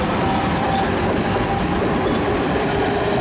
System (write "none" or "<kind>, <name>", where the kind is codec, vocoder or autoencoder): vocoder, BigVGAN v2